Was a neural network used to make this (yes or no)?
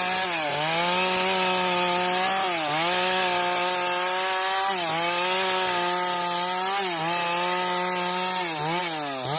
no